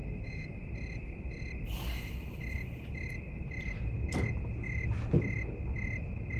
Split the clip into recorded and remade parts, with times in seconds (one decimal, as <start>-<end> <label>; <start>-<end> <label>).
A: 0.0-0.6 remade; 0.6-6.4 recorded